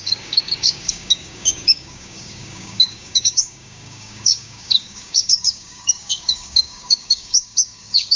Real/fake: fake